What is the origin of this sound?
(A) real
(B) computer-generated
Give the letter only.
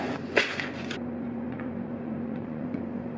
B